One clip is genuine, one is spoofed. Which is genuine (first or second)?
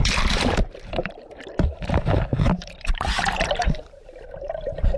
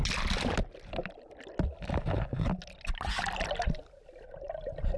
second